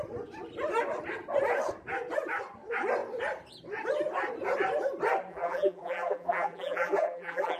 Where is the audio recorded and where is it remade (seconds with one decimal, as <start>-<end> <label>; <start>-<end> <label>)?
0.0-5.3 recorded; 5.3-7.6 remade